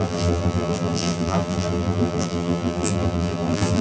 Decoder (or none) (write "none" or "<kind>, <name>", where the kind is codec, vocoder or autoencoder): vocoder, BigVGAN v2